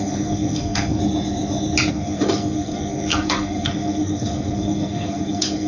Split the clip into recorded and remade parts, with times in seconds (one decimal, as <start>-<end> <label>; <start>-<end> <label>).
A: 0.0-1.0 remade; 1.0-1.9 recorded; 1.9-5.7 remade